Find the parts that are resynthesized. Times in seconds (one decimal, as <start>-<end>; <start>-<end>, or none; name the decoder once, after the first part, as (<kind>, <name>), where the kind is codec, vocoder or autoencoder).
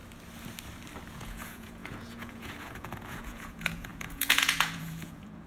1.1-5.5 (vocoder, Vocos)